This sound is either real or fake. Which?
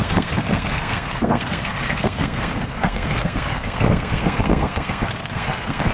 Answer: fake